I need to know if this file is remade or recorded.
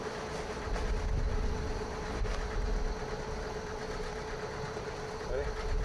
recorded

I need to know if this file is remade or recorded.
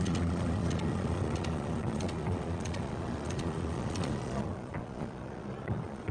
remade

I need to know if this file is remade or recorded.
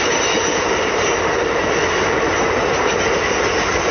remade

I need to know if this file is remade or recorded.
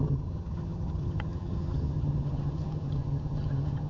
remade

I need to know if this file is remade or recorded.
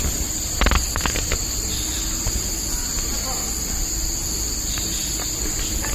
recorded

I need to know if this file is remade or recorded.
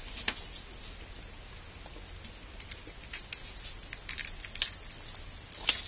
recorded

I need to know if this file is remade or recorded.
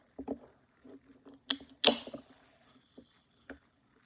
recorded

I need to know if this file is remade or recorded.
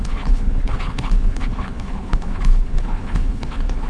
remade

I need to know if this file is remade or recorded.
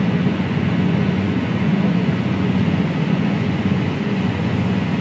remade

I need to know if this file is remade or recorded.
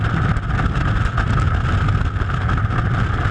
recorded